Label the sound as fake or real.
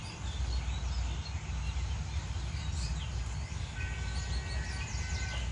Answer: real